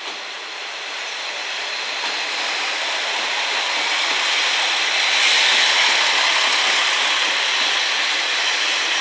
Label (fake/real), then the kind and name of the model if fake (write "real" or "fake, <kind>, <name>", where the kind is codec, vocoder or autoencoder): real